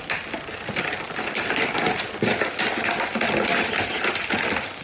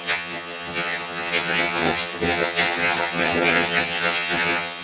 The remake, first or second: second